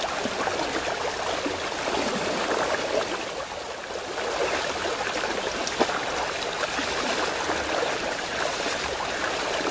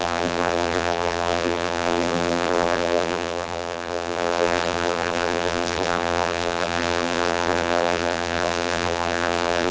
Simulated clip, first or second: second